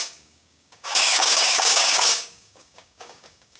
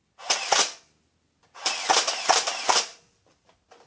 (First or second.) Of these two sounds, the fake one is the first